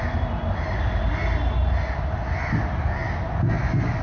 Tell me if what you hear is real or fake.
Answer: real